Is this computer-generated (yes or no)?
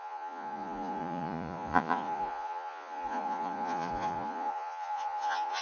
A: yes